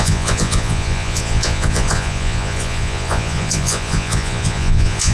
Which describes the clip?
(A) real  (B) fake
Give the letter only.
B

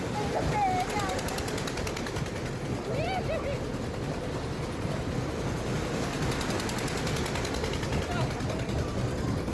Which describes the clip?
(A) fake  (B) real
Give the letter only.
B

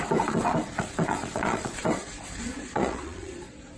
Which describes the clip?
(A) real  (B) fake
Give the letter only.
B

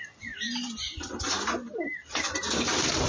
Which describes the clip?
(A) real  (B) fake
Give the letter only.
A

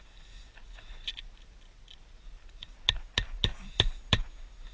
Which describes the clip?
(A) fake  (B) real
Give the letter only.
B